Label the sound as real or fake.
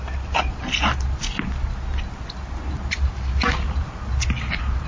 real